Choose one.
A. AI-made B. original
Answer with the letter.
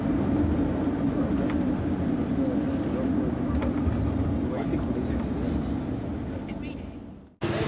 B